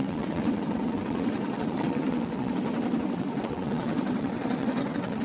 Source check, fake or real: fake